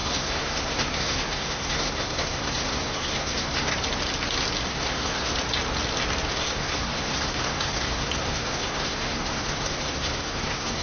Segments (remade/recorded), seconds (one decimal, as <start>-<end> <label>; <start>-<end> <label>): 0.0-3.7 remade; 3.7-4.7 recorded; 4.7-5.3 remade; 5.3-6.3 recorded; 6.3-10.8 remade